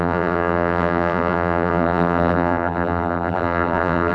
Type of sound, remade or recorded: remade